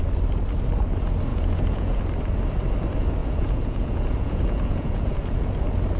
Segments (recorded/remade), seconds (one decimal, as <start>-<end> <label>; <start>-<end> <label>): 0.0-1.3 recorded; 1.3-2.0 remade; 2.0-3.2 recorded; 3.2-5.5 remade; 5.5-6.0 recorded